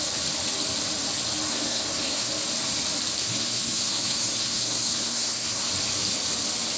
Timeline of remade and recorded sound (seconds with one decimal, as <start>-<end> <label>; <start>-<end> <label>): 0.0-1.5 recorded; 1.5-2.3 remade; 2.3-3.2 recorded; 3.2-5.7 remade; 5.7-6.8 recorded